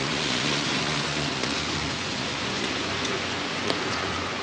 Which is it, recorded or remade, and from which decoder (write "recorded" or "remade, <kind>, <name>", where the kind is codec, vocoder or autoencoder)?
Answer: remade, vocoder, Vocos